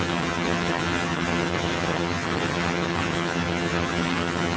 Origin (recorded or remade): remade